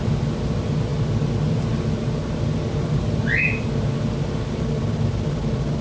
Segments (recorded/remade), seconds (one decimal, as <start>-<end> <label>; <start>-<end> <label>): 0.0-5.8 recorded

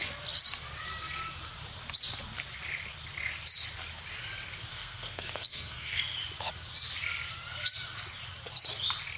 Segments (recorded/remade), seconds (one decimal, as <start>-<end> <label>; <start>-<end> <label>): 0.0-4.7 recorded; 4.7-6.0 remade; 6.0-9.2 recorded